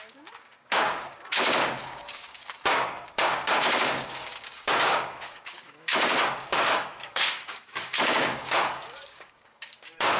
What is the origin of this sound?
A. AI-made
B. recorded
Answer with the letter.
A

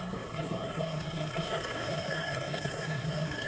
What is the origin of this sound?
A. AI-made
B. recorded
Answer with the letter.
A